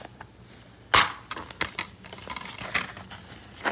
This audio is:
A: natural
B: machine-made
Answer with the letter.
A